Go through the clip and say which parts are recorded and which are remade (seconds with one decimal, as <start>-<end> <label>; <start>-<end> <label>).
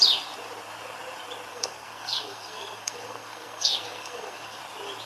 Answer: 0.0-1.5 recorded; 1.5-4.6 remade; 4.6-5.1 recorded